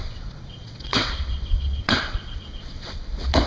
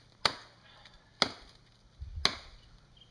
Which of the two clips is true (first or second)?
second